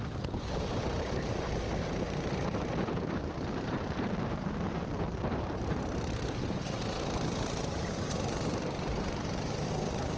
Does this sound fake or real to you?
fake